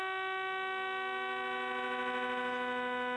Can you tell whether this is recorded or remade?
recorded